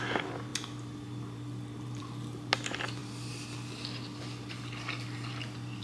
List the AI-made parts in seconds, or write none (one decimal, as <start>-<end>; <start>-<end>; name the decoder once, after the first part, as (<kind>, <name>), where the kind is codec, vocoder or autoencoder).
none